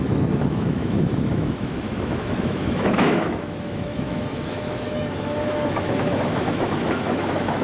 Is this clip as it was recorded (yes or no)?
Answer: no